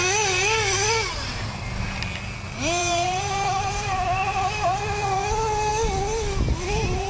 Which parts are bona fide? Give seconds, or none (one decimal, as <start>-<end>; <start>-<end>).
0.0-2.8; 4.8-7.1